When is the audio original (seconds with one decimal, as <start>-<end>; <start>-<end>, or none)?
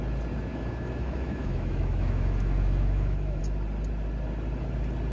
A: 0.0-0.5; 3.4-5.1